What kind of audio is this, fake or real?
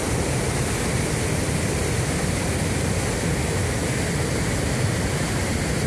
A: real